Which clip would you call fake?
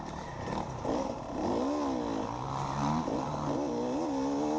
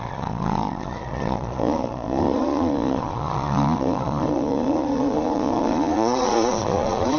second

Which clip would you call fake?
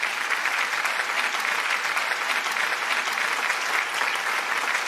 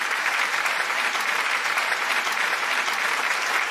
second